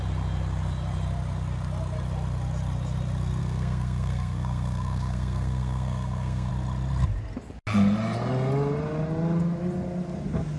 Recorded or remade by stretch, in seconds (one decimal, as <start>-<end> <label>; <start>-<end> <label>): 0.0-3.4 recorded; 3.4-6.5 remade; 6.5-10.6 recorded